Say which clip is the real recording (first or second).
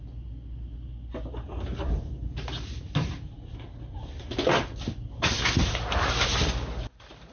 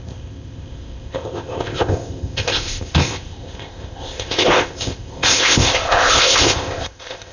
first